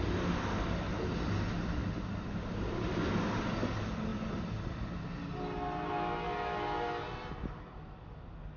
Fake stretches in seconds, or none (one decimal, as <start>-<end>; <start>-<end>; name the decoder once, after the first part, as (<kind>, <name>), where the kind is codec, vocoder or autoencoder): none